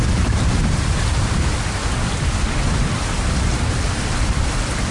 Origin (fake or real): real